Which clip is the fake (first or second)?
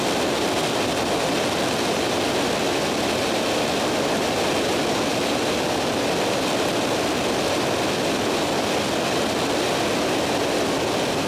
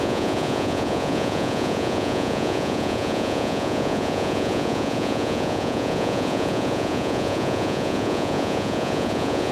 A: second